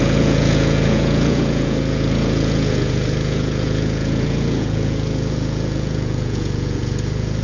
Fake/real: fake